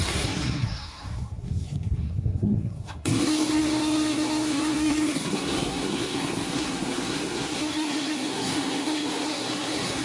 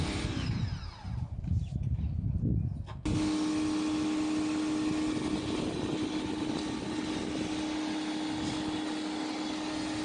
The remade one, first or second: first